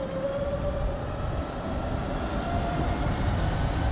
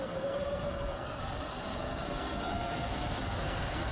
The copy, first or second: second